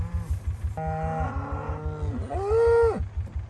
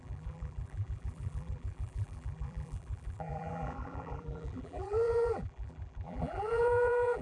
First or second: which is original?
first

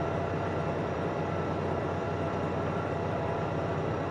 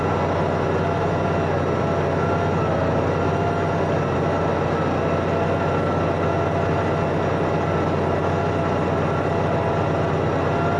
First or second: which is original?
second